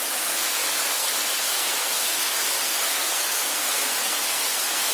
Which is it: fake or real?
fake